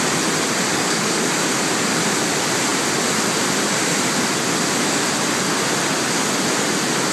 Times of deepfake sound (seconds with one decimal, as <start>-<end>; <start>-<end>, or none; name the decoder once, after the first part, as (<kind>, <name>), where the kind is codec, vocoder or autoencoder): 0.7-1.3 (codec, DAC)